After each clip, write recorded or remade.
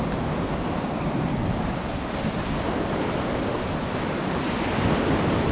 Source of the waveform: recorded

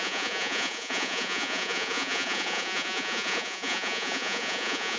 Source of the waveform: remade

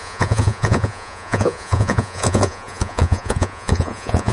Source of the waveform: remade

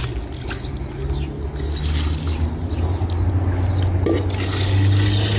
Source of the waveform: recorded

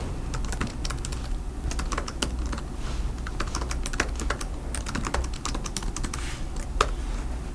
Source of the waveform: recorded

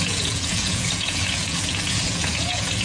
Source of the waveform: remade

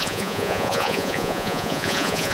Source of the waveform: remade